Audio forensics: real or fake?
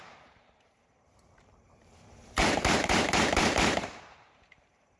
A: fake